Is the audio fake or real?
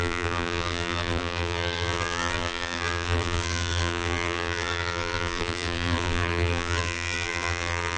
fake